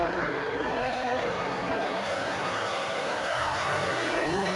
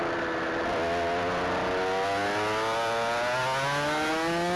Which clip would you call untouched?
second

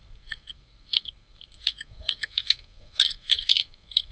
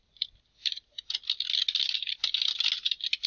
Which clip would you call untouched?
second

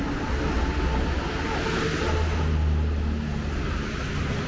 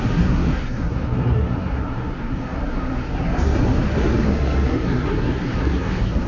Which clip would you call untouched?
first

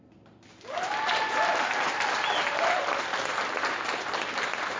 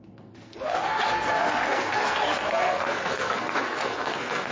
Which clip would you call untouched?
first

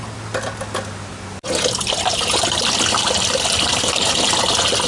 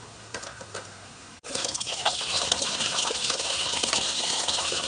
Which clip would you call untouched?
first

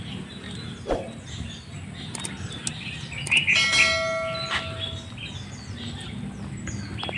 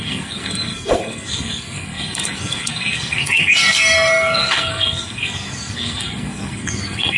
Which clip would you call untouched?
first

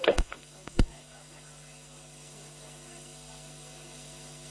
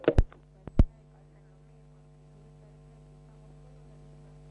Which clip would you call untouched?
second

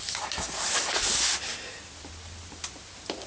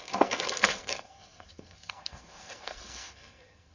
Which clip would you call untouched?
first